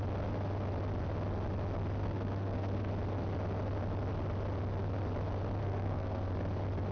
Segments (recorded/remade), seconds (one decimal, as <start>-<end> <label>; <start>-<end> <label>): 0.0-2.0 recorded; 2.0-2.9 remade; 2.9-5.6 recorded; 5.6-6.3 remade; 6.3-6.9 recorded